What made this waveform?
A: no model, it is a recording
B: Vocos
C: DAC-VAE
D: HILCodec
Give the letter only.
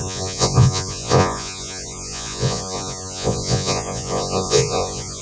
B